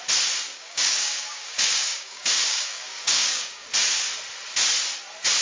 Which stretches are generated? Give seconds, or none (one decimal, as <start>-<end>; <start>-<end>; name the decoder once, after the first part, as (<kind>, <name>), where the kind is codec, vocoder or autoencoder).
0.5-3.7 (codec, DAC)